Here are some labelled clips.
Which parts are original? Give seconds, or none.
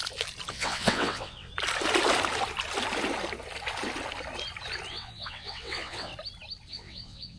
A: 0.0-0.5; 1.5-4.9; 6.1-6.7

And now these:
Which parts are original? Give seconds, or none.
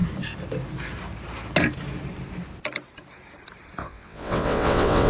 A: 0.0-3.8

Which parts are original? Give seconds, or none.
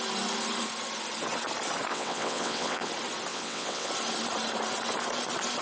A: 0.0-1.9; 2.9-3.3; 3.9-5.6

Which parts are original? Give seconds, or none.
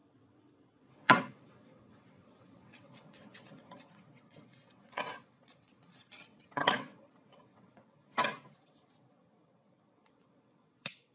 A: 8.0-8.6